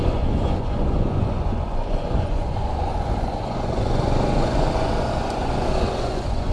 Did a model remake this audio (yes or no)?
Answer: yes